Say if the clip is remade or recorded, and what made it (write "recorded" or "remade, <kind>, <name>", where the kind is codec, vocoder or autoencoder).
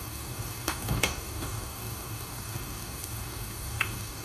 remade, codec, DAC